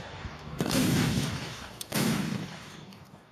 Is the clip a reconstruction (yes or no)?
yes